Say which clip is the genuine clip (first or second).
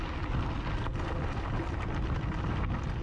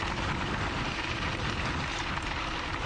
first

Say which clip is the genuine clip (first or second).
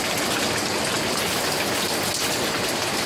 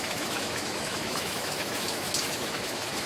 first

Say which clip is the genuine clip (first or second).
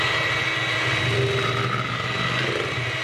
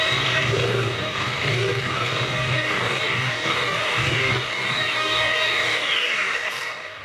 first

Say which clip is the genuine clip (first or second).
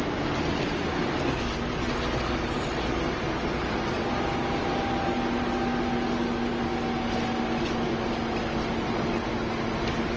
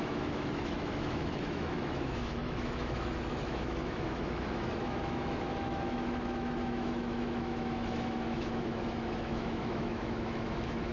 first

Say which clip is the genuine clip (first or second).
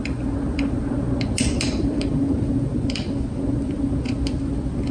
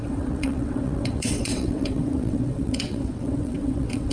first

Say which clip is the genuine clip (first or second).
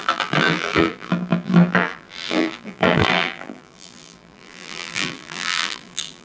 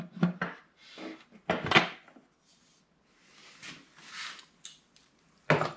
second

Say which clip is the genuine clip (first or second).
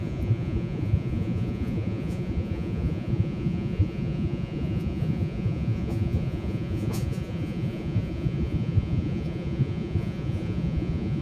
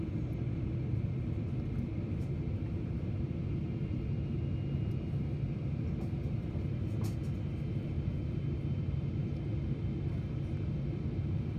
second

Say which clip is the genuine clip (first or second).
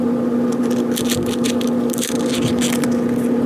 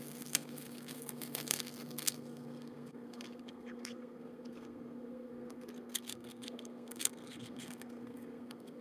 first